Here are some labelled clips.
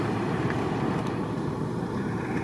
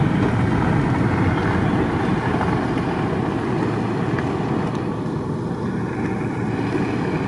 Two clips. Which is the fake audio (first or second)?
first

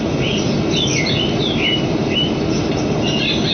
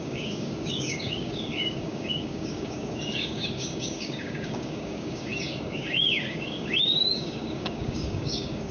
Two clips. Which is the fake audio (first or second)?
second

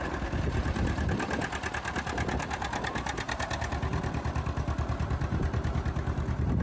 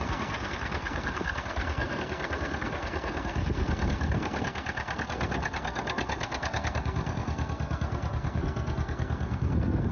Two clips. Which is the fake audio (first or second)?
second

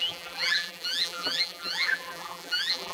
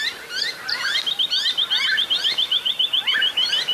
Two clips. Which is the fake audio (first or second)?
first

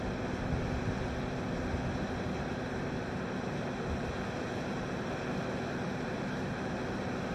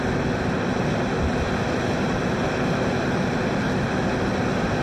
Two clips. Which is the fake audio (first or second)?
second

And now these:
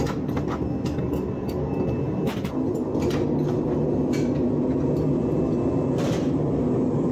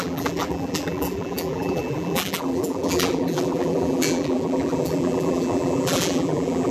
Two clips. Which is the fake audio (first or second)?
second